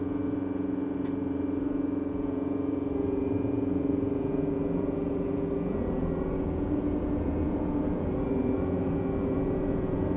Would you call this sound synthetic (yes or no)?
yes